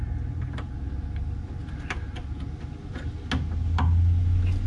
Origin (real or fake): real